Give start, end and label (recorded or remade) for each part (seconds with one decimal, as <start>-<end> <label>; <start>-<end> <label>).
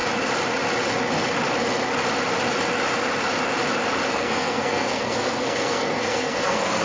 0.0-4.1 recorded; 4.1-6.8 remade